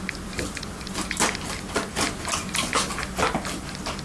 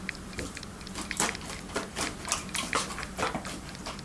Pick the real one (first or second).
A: first